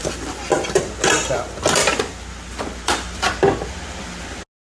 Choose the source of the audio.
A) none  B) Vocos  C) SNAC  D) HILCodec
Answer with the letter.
A